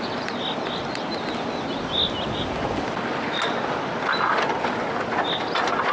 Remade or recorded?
recorded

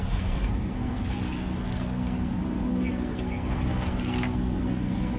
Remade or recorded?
remade